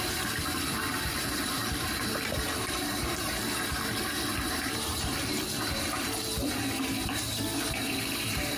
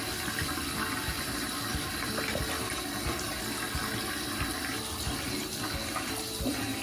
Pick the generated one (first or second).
first